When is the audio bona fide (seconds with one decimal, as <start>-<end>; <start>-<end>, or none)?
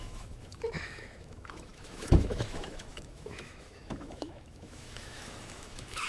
none